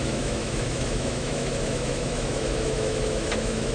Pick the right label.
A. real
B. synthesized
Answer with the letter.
B